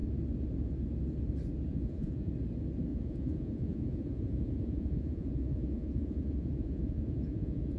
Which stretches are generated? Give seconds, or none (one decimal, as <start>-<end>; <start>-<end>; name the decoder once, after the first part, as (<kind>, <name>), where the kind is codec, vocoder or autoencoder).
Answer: 1.7-2.3 (vocoder, Vocos); 2.9-7.8